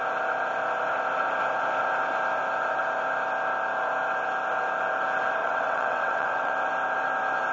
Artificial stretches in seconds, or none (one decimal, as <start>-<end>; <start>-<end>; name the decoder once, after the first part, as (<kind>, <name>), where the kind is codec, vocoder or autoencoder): 5.4-6.5 (vocoder, WaveNeXt)